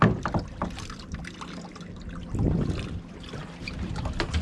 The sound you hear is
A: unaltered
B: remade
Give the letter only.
A